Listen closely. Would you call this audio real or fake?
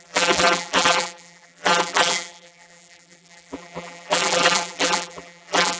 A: fake